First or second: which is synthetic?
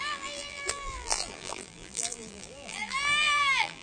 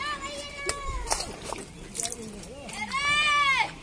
first